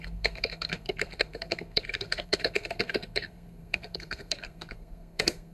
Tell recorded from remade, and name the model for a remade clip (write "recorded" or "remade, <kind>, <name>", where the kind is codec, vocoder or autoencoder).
remade, codec, SNAC